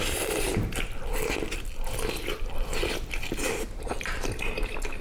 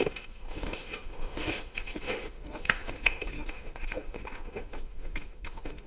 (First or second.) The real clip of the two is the first